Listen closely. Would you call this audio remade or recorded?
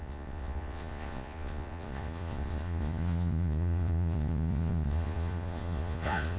remade